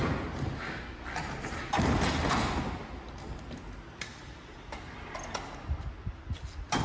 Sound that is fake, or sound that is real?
real